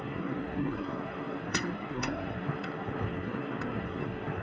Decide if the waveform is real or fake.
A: fake